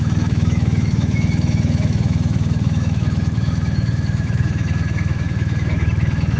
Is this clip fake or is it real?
fake